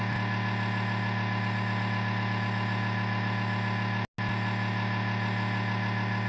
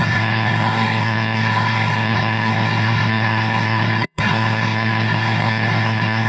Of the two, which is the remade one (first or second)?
second